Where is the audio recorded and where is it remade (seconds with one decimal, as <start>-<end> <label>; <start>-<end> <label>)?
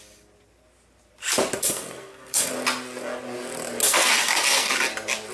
0.0-1.6 recorded; 1.6-2.5 remade; 2.5-3.8 recorded; 3.8-4.7 remade; 4.7-5.3 recorded